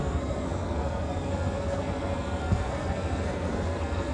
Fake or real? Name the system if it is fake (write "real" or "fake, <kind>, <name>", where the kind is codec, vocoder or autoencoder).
fake, codec, SNAC